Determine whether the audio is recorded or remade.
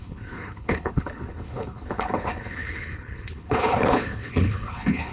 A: remade